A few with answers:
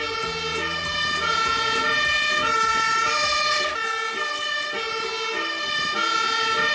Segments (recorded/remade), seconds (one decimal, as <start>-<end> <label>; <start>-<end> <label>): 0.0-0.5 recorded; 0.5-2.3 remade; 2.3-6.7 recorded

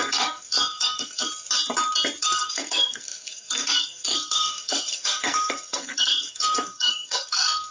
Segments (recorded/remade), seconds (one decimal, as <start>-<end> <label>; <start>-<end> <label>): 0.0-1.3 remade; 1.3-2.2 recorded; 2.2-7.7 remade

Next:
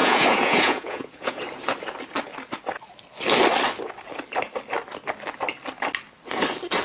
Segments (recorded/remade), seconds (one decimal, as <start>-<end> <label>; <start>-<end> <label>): 0.0-1.4 remade; 1.4-6.8 recorded

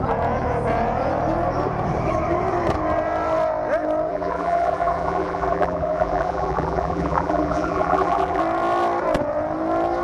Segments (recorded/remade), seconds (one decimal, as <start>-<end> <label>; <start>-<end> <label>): 0.0-4.1 recorded; 4.1-8.4 remade; 8.4-10.0 recorded

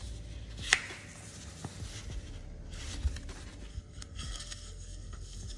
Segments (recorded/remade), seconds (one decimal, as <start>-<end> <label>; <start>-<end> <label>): 0.0-3.7 recorded; 3.7-5.6 remade

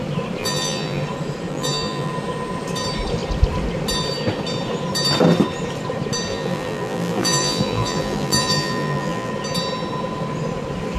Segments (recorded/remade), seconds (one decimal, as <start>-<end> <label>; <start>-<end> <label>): 0.0-0.4 recorded; 0.4-1.0 remade; 1.0-1.5 recorded; 1.5-2.1 remade; 2.1-6.3 recorded; 6.3-9.3 remade; 9.3-11.0 recorded

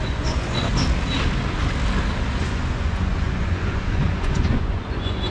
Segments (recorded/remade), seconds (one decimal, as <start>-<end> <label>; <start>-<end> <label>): 0.0-0.7 remade; 0.7-2.3 recorded; 2.3-5.3 remade

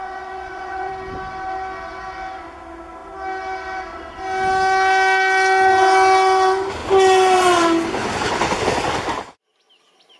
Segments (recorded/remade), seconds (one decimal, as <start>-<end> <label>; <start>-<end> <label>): 0.0-0.9 remade; 0.9-10.2 recorded